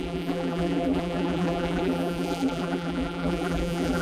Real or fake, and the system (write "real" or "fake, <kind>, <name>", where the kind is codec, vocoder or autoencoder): fake, vocoder, BigVGAN v2